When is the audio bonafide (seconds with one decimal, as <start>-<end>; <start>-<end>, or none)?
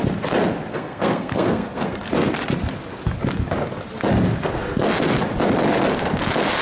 0.0-0.7; 2.1-6.6